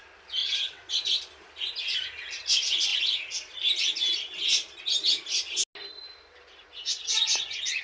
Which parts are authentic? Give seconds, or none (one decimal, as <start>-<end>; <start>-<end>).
0.0-0.4; 0.9-7.8